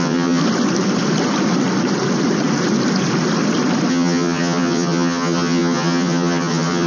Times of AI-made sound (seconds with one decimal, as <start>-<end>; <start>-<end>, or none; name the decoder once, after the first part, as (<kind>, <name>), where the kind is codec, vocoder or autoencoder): 0.0-0.4 (vocoder, HiFi-GAN); 3.9-6.9